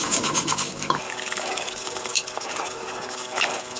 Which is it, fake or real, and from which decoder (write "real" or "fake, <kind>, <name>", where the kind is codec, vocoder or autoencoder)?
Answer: fake, codec, DAC